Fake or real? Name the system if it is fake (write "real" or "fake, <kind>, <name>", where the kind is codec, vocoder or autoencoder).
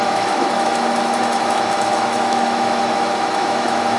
fake, autoencoder, DAC-VAE